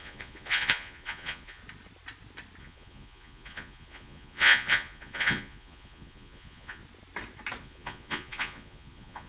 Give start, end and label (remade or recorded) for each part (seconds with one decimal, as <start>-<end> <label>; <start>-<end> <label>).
0.0-1.6 remade; 1.6-2.6 recorded; 2.6-6.8 remade; 6.8-7.6 recorded; 7.6-9.3 remade